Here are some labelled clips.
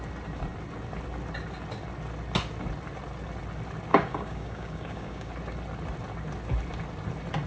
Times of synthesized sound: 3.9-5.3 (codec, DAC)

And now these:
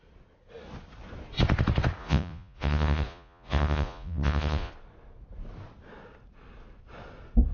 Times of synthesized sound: 2.0-4.7 (vocoder, Vocos)

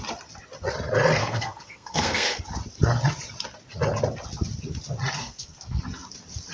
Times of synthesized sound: 1.2-2.4 (codec, SNAC); 5.2-5.8